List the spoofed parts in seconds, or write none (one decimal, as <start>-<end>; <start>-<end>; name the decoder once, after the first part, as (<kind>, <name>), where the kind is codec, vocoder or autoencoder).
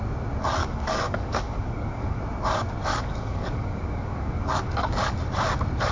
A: 0.6-2.2 (codec, DAC); 2.9-5.2